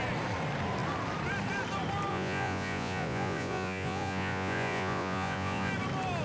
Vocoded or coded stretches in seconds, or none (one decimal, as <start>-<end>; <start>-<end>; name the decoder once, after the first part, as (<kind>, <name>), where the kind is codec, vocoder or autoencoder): 2.1-5.7 (vocoder, Vocos)